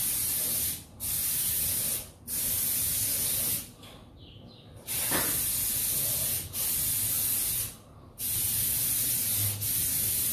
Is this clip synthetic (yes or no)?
no